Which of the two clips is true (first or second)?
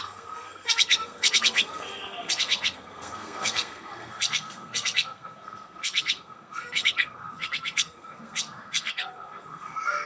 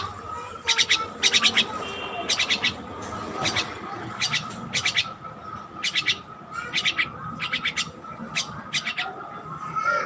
second